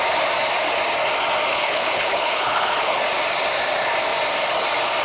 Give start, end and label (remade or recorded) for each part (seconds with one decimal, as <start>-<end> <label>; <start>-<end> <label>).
0.0-1.5 recorded; 1.5-3.0 remade; 3.0-5.0 recorded